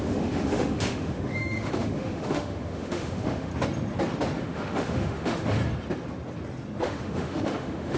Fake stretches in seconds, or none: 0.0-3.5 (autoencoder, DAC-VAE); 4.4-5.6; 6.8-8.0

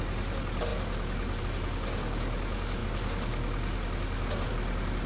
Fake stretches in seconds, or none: none

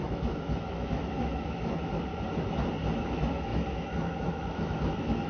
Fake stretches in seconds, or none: 0.0-2.1 (autoencoder, DAC-VAE); 3.0-5.3

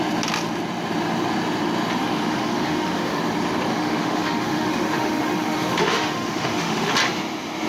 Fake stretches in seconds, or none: 2.0-3.2 (autoencoder, DAC-VAE); 3.7-6.9

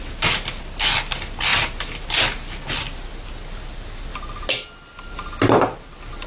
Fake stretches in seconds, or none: none

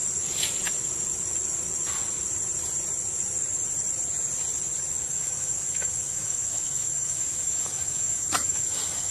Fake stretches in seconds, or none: 5.0-9.1 (autoencoder, DAC-VAE)

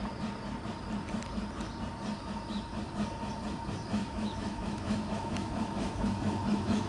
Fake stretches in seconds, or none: 4.0-6.9 (autoencoder, DAC-VAE)